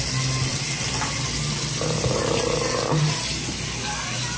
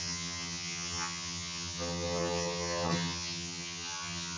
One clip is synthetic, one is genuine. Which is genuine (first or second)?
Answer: first